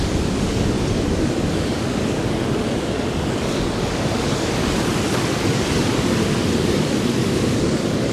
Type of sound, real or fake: fake